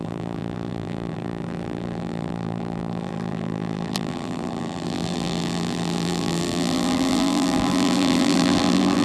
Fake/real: fake